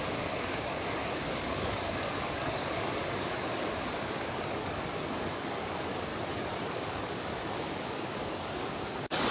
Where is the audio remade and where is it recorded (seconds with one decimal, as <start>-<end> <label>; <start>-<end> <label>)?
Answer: 0.0-6.1 remade; 6.1-6.7 recorded; 6.7-9.3 remade